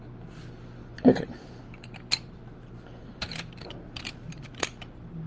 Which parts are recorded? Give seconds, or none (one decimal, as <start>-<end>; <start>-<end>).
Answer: 0.0-0.8; 1.6-3.0; 3.9-5.3